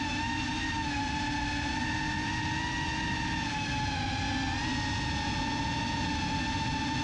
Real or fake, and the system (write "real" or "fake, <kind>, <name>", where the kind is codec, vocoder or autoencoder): real